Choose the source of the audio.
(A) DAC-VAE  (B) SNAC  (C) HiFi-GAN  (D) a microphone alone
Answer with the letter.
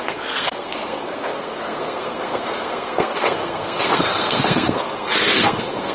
B